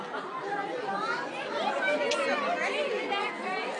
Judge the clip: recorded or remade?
recorded